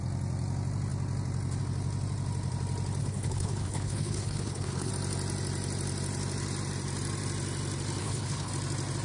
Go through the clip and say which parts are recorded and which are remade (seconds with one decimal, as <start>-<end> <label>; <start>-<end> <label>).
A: 0.0-3.0 recorded; 3.0-4.9 remade; 4.9-8.0 recorded; 8.0-8.5 remade; 8.5-9.0 recorded